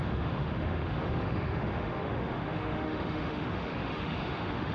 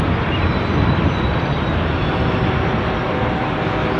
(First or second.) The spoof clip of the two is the first